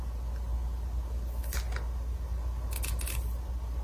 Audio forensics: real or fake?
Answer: real